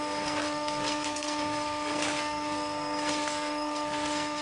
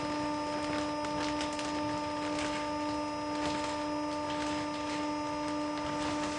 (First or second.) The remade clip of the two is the first